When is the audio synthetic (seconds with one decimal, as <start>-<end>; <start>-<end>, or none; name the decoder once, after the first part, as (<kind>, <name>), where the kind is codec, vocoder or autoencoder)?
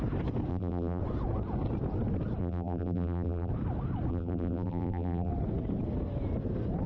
0.5-1.0 (vocoder, BigVGAN v2); 2.4-3.5; 4.1-5.3